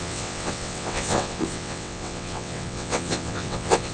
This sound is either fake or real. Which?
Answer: fake